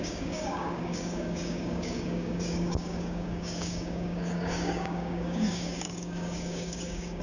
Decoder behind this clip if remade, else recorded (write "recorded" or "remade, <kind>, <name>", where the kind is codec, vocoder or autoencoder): remade, codec, DAC